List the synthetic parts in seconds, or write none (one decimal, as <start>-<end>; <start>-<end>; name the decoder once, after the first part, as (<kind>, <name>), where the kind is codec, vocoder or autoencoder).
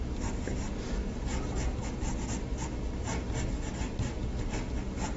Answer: none